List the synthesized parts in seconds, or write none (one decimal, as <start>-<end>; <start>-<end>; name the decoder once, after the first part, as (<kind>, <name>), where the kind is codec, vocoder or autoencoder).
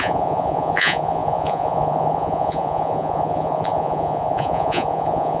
0.0-5.4 (vocoder, Vocos)